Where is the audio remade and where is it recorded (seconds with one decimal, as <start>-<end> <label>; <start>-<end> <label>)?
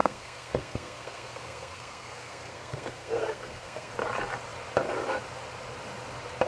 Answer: 0.0-3.9 remade; 3.9-6.5 recorded